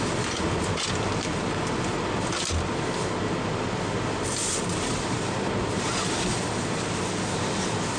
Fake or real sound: real